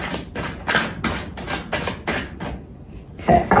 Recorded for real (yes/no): yes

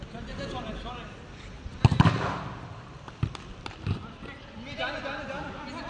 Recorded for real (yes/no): yes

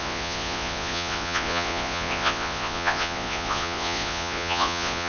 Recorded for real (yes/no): no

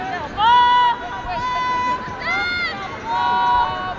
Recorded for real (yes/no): yes